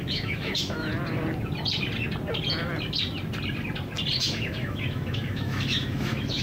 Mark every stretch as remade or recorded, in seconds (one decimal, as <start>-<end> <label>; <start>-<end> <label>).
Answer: 0.0-0.9 remade; 0.9-4.2 recorded; 4.2-6.4 remade